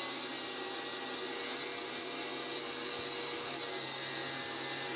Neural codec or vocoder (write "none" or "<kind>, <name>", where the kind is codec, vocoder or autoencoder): none